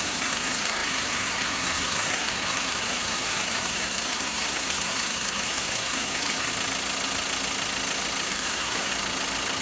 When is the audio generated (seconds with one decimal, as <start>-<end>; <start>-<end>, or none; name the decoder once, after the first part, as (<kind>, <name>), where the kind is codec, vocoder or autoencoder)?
0.0-6.5 (codec, SNAC); 8.3-8.9